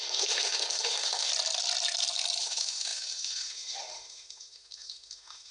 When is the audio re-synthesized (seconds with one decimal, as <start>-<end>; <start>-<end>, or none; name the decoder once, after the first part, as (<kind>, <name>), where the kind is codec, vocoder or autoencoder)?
0.0-1.3 (autoencoder, DAC-VAE); 2.4-5.5